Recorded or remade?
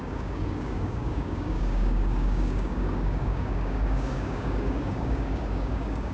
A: remade